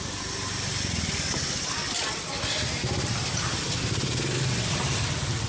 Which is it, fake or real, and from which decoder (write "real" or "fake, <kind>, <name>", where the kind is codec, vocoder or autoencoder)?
real